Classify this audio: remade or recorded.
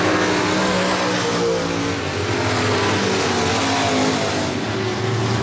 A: recorded